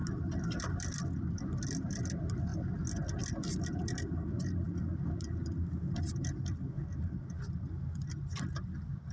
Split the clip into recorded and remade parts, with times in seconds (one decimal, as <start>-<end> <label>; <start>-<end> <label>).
0.0-9.1 recorded

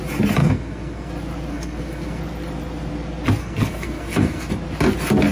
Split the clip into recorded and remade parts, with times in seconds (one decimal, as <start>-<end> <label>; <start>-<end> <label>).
0.0-0.4 recorded; 0.4-1.1 remade; 1.1-1.5 recorded; 1.5-2.2 remade; 2.2-3.4 recorded; 3.4-4.5 remade; 4.5-5.3 recorded

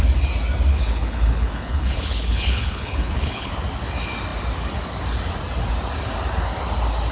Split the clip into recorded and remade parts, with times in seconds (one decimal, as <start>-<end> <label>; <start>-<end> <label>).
0.0-0.7 recorded; 0.7-3.5 remade; 3.5-7.1 recorded

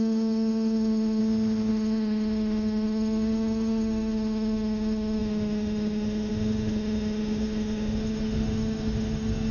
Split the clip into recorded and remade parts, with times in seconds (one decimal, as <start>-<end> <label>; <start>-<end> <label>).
0.0-1.2 remade; 1.2-1.7 recorded; 1.7-9.5 remade

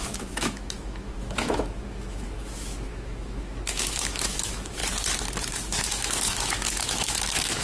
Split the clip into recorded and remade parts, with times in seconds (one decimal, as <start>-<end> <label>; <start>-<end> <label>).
0.0-4.8 remade; 4.8-5.5 recorded; 5.5-7.6 remade